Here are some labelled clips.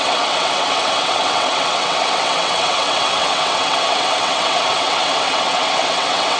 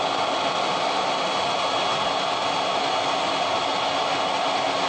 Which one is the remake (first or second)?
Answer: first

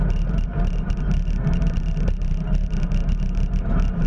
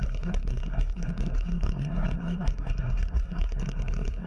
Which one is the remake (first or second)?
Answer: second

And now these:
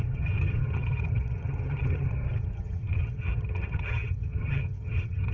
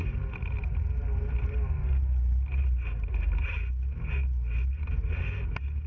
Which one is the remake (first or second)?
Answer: first